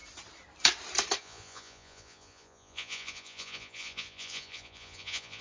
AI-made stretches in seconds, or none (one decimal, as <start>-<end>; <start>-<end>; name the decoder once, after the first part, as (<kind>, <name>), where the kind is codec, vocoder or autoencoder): 1.2-5.4 (vocoder, Vocos)